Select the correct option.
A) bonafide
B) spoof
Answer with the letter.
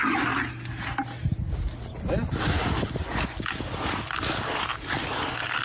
A